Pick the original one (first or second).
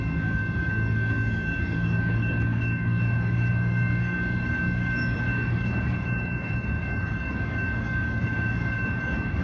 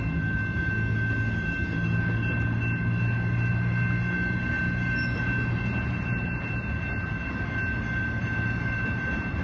second